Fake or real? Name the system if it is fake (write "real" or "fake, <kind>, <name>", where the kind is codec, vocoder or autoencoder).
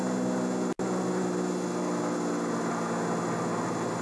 real